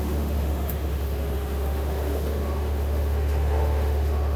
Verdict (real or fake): fake